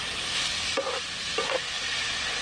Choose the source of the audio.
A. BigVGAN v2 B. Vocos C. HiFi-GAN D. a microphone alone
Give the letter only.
D